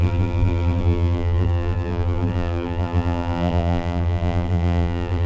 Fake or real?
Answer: fake